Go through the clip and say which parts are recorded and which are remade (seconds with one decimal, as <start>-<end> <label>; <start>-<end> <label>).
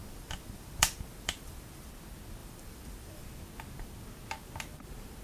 0.0-1.9 remade; 1.9-2.4 recorded; 2.4-3.2 remade; 3.2-5.2 recorded